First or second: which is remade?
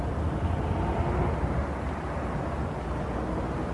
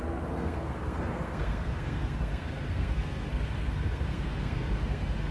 second